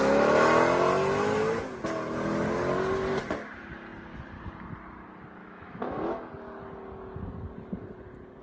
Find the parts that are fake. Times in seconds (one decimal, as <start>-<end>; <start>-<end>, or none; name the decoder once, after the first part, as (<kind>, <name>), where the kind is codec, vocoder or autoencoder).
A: 5.4-6.3 (autoencoder, DAC-VAE)